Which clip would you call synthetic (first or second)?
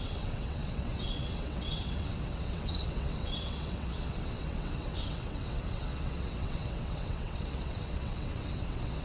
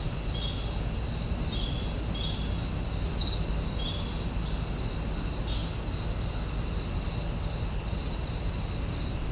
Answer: first